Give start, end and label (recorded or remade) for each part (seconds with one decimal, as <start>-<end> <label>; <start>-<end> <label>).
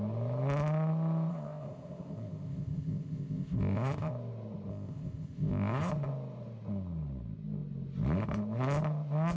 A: 0.0-1.3 recorded; 1.3-4.1 remade; 4.1-4.7 recorded; 4.7-5.9 remade; 5.9-9.4 recorded